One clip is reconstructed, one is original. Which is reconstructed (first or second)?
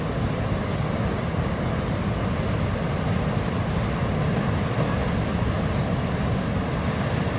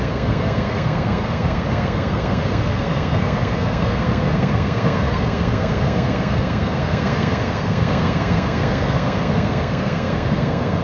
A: second